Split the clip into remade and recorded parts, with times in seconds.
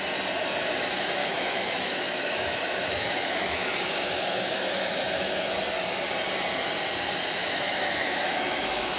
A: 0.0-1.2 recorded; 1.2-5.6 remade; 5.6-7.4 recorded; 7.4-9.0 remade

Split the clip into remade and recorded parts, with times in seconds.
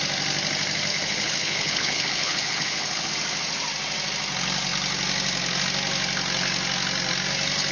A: 0.0-0.9 recorded; 0.9-3.1 remade; 3.1-7.7 recorded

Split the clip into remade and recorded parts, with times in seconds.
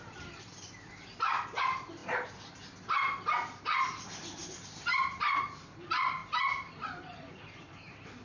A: 0.0-2.0 remade; 2.0-5.4 recorded; 5.4-8.2 remade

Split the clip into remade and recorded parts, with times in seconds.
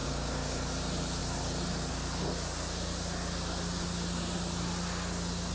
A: 0.0-0.6 remade; 0.6-5.5 recorded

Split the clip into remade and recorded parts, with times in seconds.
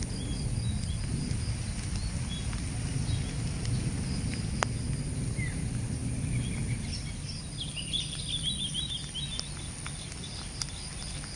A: 0.0-6.0 recorded; 6.0-8.2 remade; 8.2-11.4 recorded